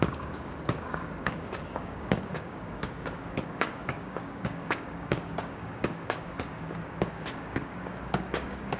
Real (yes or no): no